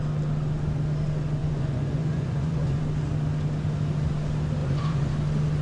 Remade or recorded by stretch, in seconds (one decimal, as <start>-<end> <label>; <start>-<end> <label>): 0.0-1.4 recorded; 1.4-2.8 remade; 2.8-4.6 recorded; 4.6-5.1 remade; 5.1-5.6 recorded